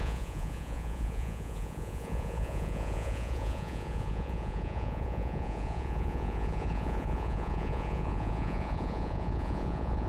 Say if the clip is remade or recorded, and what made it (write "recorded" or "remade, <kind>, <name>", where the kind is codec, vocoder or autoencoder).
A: remade, vocoder, Vocos